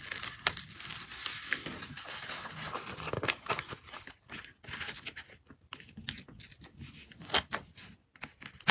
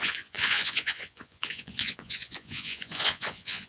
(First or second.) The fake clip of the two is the second